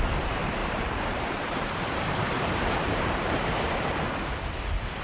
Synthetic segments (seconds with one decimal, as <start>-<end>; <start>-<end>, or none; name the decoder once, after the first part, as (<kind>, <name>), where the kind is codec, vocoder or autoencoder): 0.6-3.6 (vocoder, BigVGAN v2)